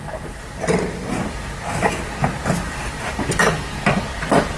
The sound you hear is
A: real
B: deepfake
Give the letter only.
A